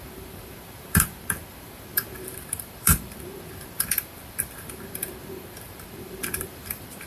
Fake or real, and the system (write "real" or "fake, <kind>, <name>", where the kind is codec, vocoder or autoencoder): fake, vocoder, BigVGAN v2